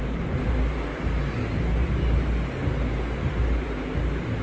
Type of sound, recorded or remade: recorded